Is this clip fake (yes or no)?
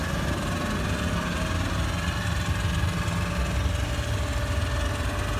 no